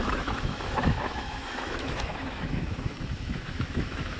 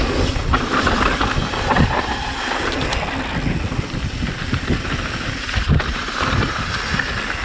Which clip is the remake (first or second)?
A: first